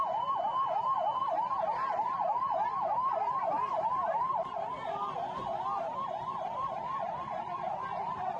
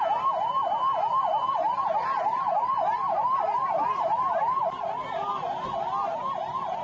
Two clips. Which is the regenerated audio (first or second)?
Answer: first